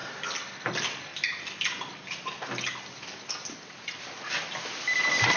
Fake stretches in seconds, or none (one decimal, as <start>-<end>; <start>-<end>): none